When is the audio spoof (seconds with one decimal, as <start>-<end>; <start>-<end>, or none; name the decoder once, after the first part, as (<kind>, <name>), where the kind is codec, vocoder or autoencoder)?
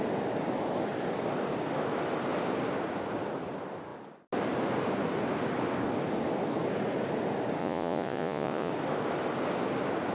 7.6-8.7 (vocoder, Vocos)